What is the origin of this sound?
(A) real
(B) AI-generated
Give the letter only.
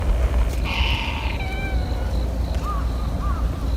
A